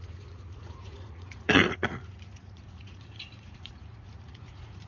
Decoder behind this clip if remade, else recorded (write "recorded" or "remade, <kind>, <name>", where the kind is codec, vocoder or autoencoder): remade, vocoder, Vocos